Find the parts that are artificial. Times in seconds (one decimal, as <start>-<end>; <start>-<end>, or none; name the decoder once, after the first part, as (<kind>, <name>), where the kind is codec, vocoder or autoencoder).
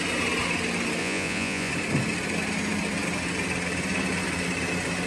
1.0-1.7 (vocoder, Vocos)